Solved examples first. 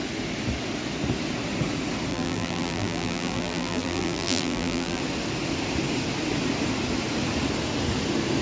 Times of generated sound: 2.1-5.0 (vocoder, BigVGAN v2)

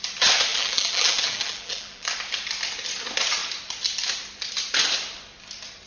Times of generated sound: 0.5-2.1 (vocoder, BigVGAN v2)